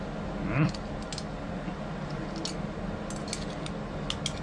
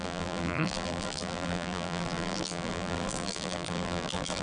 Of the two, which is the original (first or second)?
first